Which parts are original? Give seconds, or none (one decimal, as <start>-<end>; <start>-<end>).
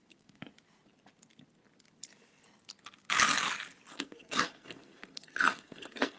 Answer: 0.4-3.9